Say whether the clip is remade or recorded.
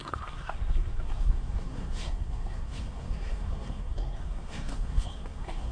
remade